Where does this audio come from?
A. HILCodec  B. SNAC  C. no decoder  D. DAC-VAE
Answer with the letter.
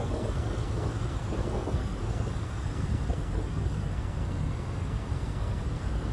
B